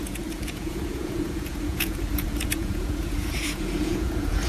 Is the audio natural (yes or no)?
no